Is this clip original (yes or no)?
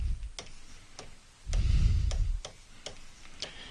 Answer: yes